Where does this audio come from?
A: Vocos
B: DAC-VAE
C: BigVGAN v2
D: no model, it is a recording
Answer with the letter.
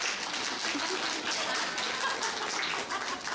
D